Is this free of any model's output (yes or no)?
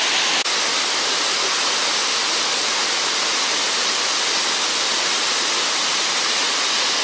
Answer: yes